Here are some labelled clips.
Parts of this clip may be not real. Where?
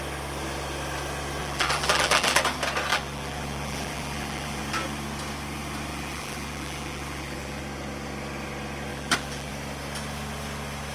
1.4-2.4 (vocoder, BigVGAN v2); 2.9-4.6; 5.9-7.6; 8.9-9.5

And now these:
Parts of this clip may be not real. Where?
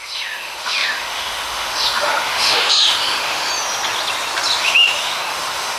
0.0-3.5 (autoencoder, DAC-VAE); 4.6-5.8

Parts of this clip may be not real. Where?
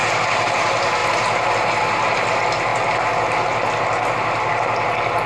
none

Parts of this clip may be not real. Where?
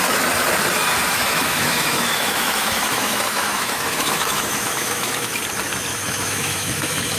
1.1-5.4 (autoencoder, DAC-VAE); 5.9-7.2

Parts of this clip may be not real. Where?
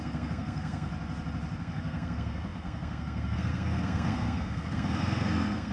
0.0-0.9 (codec, SNAC); 1.6-5.7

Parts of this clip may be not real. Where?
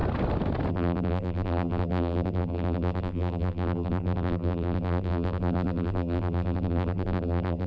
0.7-7.7 (vocoder, BigVGAN v2)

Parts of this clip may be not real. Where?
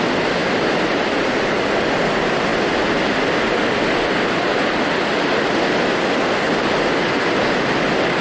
none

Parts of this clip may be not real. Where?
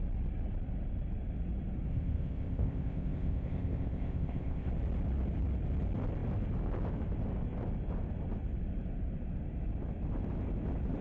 1.9-4.7 (codec, ZipCodec)